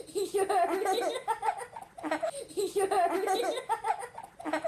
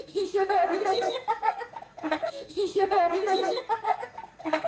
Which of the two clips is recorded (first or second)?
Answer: first